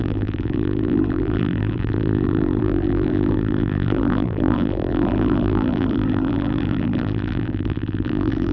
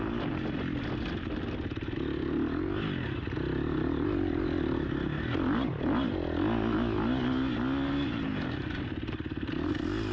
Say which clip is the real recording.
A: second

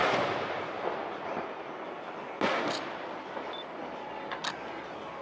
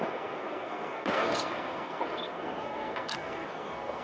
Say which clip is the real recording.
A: first